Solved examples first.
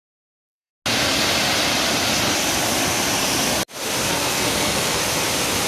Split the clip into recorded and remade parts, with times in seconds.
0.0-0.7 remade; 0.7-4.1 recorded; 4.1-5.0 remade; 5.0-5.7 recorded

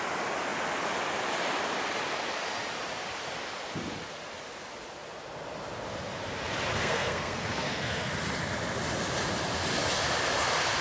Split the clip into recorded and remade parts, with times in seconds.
0.0-6.7 recorded; 6.7-8.1 remade; 8.1-10.8 recorded

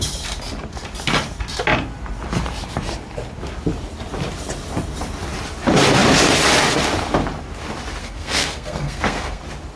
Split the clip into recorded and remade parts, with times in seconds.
0.0-8.0 recorded; 8.0-9.4 remade; 9.4-9.8 recorded

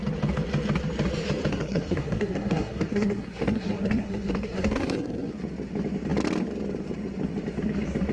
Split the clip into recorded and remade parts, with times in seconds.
0.0-1.5 recorded; 1.5-5.3 remade; 5.3-8.1 recorded

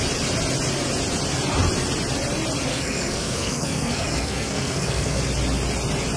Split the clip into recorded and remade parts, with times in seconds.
0.0-2.7 recorded; 2.7-5.2 remade; 5.2-6.2 recorded

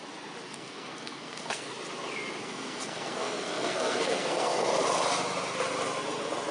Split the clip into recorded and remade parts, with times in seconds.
0.0-0.5 recorded; 0.5-1.7 remade; 1.7-2.4 recorded; 2.4-4.7 remade; 4.7-6.5 recorded

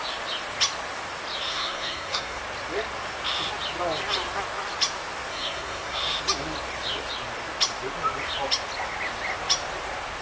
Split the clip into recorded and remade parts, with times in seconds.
0.0-1.5 recorded; 1.5-2.4 remade; 2.4-5.3 recorded; 5.3-6.0 remade; 6.0-10.2 recorded